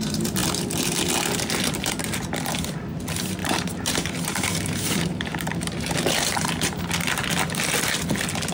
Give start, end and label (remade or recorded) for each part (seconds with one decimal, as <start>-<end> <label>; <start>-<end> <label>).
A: 0.0-3.4 recorded; 3.4-6.8 remade; 6.8-8.5 recorded